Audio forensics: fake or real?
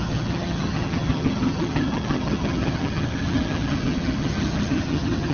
fake